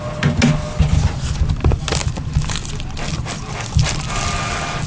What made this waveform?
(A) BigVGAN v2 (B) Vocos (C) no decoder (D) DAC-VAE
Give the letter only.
C